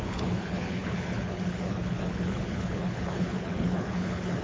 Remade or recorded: remade